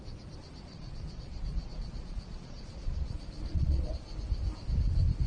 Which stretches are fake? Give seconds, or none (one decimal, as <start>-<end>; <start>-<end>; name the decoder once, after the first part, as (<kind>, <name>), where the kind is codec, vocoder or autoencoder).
0.7-3.9 (vocoder, Vocos)